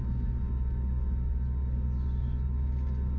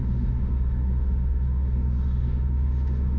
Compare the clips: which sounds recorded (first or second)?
first